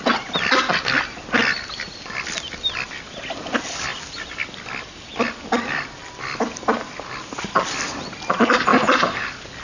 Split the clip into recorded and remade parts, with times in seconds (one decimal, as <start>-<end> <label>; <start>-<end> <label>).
0.0-8.7 recorded; 8.7-9.2 remade; 9.2-9.6 recorded